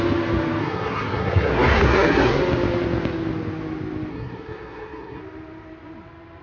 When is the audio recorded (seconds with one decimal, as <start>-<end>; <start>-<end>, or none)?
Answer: 0.0-0.6; 2.4-4.1; 5.2-6.4